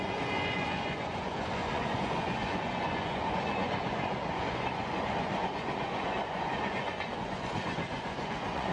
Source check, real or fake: fake